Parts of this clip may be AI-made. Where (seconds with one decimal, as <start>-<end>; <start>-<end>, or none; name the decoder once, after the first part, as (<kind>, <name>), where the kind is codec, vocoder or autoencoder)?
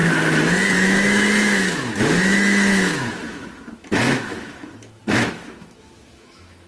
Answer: 0.7-6.7 (autoencoder, DAC-VAE)